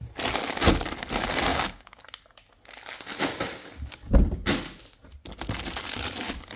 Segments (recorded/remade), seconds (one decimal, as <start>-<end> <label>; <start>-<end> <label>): 0.0-1.5 recorded; 1.5-2.0 remade; 2.0-6.6 recorded